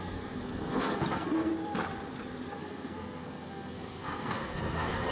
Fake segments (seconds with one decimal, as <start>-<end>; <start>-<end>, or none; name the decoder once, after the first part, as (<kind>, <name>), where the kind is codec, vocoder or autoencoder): 0.0-1.5 (codec, SNAC); 2.5-5.1